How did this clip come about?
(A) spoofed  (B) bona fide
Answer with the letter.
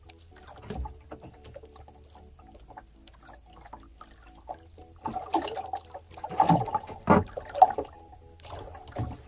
B